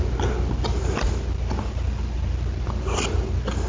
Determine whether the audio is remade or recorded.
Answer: recorded